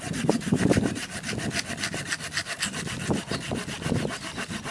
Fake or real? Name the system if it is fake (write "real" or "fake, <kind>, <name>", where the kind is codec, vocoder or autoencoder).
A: real